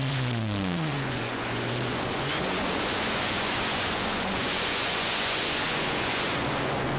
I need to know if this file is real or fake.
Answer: fake